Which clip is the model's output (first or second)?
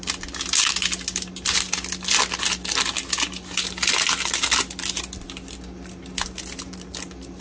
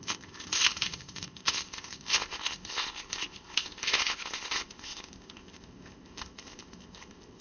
second